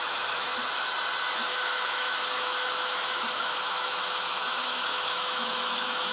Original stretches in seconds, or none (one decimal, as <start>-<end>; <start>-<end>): 0.5-1.3